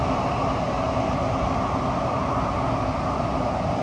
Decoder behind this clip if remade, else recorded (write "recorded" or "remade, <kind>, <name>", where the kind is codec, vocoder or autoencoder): recorded